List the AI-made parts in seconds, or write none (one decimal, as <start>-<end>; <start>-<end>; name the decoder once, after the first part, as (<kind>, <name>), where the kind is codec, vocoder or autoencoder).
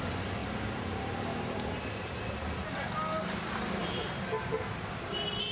none